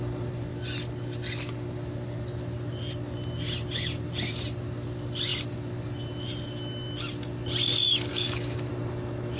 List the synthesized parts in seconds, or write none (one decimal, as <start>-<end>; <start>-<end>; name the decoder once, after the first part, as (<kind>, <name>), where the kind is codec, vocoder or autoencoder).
8.1-8.7 (codec, DAC)